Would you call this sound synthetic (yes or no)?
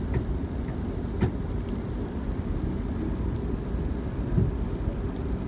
no